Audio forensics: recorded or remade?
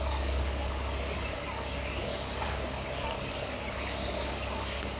remade